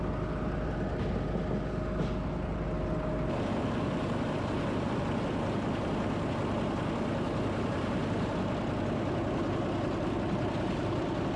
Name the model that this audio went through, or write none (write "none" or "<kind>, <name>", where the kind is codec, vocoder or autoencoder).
none